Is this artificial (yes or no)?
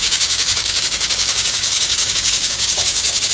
yes